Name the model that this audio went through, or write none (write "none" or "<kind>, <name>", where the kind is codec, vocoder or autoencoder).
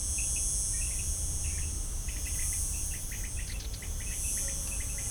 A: none